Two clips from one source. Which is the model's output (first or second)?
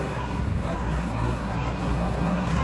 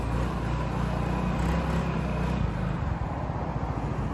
first